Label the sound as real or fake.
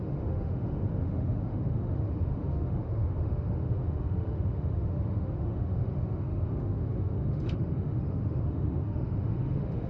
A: fake